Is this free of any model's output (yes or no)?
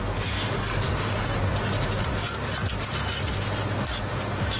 yes